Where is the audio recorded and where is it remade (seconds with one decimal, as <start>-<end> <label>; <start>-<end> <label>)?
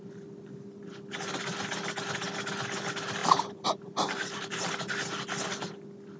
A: 0.0-3.2 recorded; 3.2-4.7 remade; 4.7-6.2 recorded